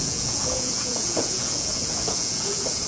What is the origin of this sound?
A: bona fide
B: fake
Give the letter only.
B